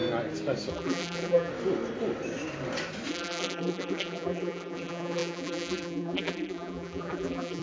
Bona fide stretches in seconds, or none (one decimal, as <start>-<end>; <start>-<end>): 0.0-0.7; 1.5-3.1